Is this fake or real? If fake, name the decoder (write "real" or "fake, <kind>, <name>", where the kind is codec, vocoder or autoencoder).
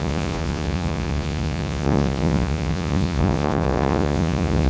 fake, vocoder, Vocos